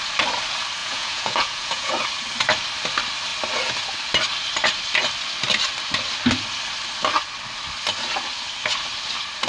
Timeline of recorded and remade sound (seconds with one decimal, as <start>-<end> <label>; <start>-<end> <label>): 0.0-0.8 recorded; 0.8-1.9 remade; 1.9-9.5 recorded